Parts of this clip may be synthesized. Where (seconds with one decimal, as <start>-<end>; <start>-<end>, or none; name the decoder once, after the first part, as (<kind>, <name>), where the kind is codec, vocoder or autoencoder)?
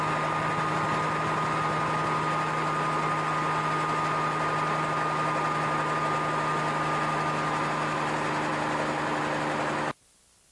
none